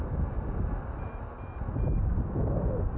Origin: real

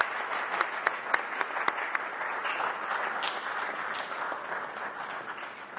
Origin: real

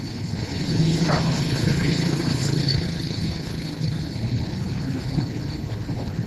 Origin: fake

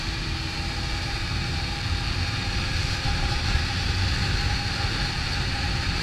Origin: fake